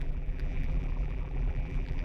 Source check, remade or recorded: remade